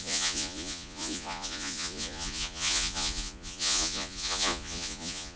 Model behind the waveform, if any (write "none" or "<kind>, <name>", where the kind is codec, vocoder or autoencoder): vocoder, Vocos